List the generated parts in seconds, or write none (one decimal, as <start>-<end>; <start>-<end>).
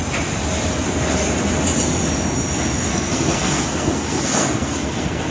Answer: 2.9-5.3